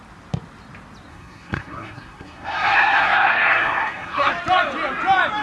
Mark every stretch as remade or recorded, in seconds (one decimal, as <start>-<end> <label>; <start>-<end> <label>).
0.0-1.1 recorded; 1.1-4.3 remade; 4.3-5.4 recorded